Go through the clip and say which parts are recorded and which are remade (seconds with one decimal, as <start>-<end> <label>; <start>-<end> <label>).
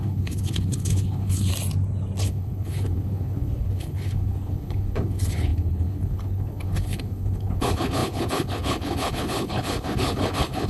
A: 0.0-1.5 remade; 1.5-2.2 recorded; 2.2-10.7 remade